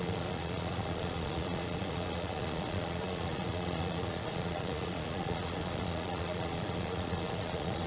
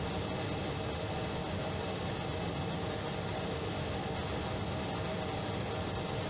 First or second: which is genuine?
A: second